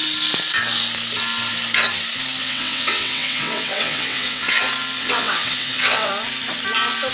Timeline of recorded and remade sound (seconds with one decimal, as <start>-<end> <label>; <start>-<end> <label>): 0.0-2.4 recorded; 2.4-4.6 remade; 4.6-5.0 recorded; 5.0-6.1 remade; 6.1-7.1 recorded